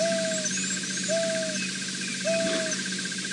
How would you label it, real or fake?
real